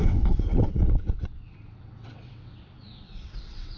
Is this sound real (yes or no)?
no